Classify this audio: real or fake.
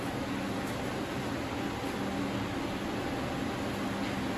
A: real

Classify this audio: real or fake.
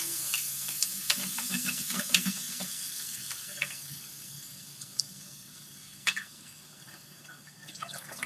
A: fake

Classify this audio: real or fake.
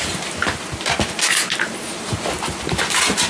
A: fake